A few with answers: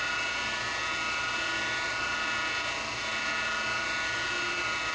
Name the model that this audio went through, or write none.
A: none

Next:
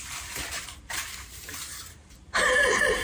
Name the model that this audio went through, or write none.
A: vocoder, BigVGAN v2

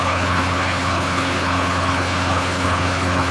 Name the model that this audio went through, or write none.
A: codec, HILCodec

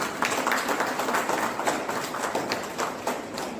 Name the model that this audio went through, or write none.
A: none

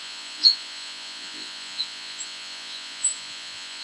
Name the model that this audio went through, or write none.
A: vocoder, Vocos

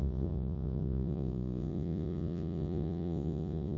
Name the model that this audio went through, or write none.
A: vocoder, Vocos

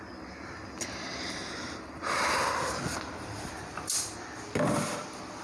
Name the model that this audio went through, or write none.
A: none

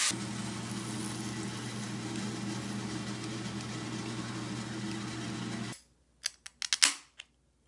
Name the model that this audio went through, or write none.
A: none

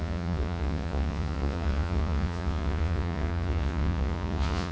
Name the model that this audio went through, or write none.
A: vocoder, Vocos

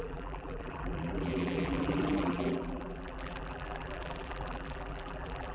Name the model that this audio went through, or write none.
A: vocoder, BigVGAN v2